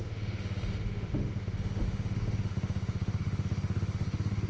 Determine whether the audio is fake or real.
fake